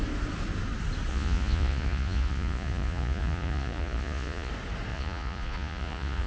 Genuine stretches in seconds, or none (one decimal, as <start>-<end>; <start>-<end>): 0.0-1.1; 4.5-4.9